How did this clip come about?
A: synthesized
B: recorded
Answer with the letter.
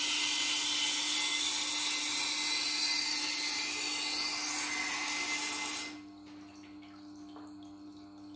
B